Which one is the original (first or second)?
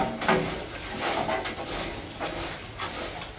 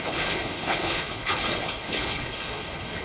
first